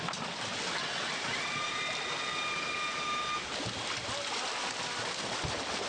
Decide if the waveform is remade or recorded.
recorded